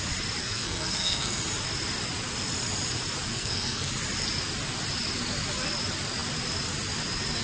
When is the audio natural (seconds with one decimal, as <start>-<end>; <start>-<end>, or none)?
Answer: 0.0-0.4; 1.4-3.3; 3.9-7.4